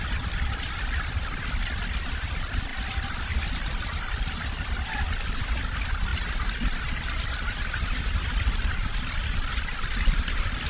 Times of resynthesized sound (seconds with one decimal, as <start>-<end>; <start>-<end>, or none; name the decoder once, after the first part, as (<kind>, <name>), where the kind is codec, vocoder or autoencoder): 0.0-2.7 (vocoder, BigVGAN v2); 3.4-6.1; 8.5-10.7